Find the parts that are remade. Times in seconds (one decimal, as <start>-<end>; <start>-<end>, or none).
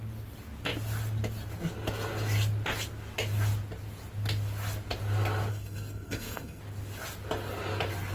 5.5-6.6